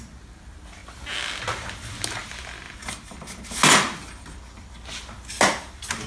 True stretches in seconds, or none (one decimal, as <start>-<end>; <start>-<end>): 0.0-6.1